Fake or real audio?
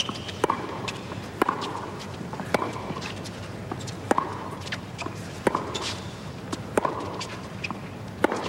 fake